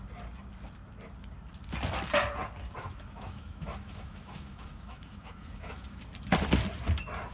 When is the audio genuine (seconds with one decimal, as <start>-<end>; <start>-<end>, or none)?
0.0-2.8; 6.0-7.3